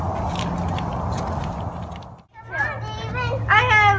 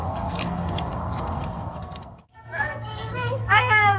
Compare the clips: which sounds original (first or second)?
first